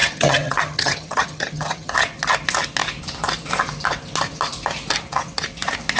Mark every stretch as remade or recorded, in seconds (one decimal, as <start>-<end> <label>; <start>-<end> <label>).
0.0-1.9 remade; 1.9-6.0 recorded